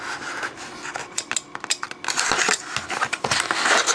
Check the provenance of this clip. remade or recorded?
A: recorded